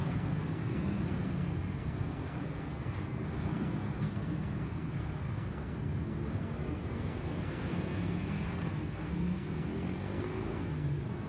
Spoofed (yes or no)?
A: yes